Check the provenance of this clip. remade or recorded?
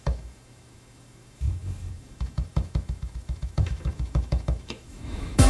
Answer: remade